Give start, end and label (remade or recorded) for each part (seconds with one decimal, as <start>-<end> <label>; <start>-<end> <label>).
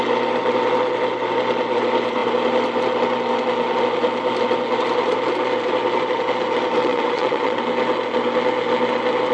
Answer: 0.0-6.8 recorded; 6.8-7.6 remade; 7.6-9.3 recorded